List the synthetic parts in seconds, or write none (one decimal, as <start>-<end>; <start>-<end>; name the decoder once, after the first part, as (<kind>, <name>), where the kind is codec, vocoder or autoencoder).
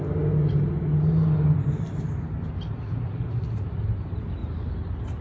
none